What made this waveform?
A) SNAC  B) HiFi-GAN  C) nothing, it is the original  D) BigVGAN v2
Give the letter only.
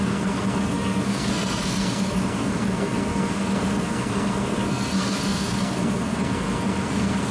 A